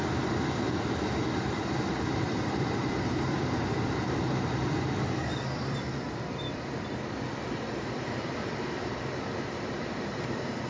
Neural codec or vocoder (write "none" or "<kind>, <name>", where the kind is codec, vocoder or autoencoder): vocoder, BigVGAN v2